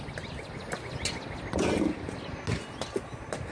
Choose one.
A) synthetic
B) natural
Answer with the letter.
B